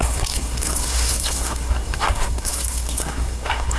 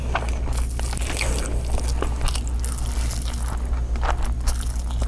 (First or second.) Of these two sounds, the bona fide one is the second